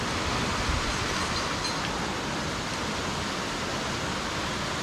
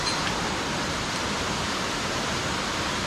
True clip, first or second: first